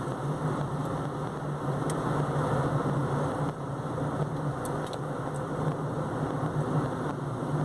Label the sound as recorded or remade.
recorded